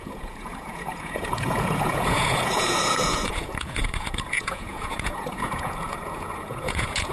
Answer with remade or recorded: remade